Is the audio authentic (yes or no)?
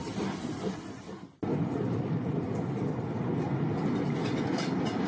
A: yes